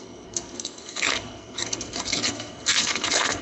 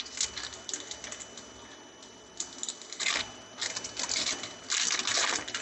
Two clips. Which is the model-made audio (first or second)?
first